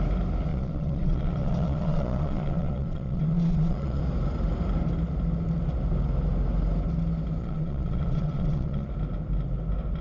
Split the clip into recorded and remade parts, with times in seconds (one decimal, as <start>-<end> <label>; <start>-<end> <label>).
0.0-0.5 recorded; 0.5-4.0 remade; 4.0-7.4 recorded; 7.4-8.9 remade; 8.9-10.0 recorded